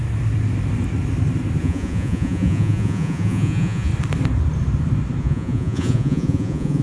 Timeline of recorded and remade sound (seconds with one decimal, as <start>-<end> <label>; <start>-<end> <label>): 0.0-1.6 recorded; 1.6-3.9 remade; 3.9-5.2 recorded; 5.2-6.8 remade